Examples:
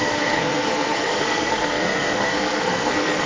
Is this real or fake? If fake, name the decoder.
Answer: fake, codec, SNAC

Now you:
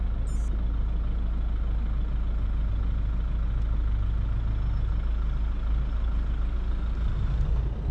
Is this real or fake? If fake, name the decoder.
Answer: real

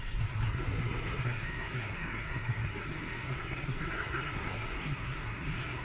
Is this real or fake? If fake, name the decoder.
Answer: fake, codec, SNAC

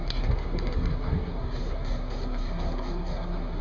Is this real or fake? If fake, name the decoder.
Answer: fake, codec, SNAC